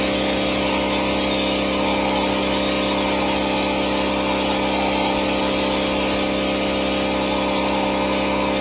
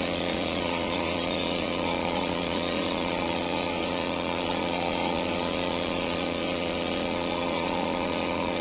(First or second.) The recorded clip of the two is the first